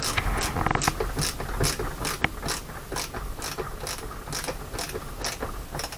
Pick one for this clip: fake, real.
real